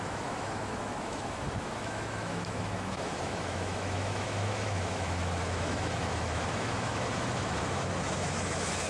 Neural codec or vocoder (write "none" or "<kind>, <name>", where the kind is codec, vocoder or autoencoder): autoencoder, DAC-VAE